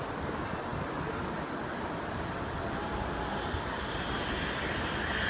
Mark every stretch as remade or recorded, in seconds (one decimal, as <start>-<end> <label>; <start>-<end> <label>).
0.0-5.3 recorded

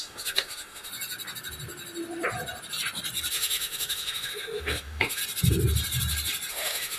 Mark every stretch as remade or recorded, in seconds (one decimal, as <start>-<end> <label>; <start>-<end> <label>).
0.0-0.9 remade; 0.9-3.3 recorded; 3.3-5.2 remade; 5.2-6.5 recorded; 6.5-7.0 remade

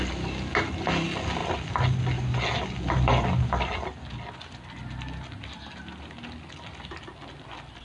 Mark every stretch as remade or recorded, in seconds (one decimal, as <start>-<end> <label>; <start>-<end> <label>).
0.0-7.8 recorded